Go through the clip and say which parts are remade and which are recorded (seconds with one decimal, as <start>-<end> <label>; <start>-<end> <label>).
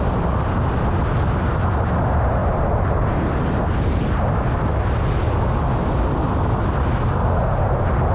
0.0-8.1 recorded